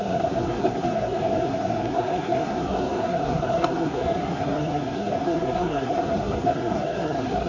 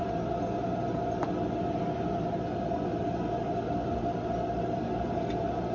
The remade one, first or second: first